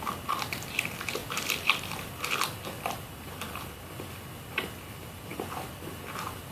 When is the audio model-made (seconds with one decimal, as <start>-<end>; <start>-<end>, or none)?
1.2-3.8; 5.3-5.9